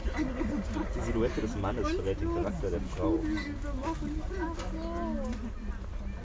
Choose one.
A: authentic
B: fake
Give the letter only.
A